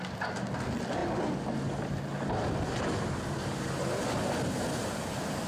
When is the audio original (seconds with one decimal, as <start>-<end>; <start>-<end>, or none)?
0.0-5.5